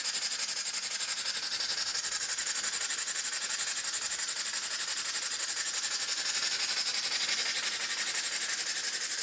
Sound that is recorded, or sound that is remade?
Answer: recorded